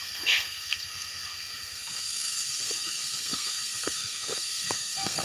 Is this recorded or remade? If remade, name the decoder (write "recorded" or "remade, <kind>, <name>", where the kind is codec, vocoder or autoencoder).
remade, codec, SNAC